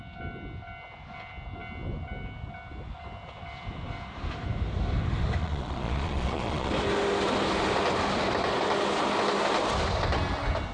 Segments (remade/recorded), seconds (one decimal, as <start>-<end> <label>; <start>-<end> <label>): 0.0-5.4 recorded; 5.4-6.7 remade; 6.7-10.7 recorded